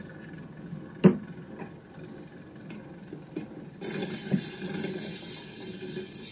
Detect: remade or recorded recorded